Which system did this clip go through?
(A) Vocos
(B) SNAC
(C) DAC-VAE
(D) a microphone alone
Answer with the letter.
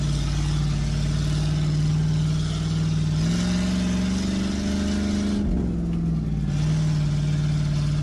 D